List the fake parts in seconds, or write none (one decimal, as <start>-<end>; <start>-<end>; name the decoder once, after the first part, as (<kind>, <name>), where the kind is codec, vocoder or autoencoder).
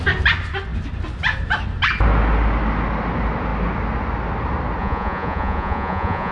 4.8-6.3 (vocoder, Vocos)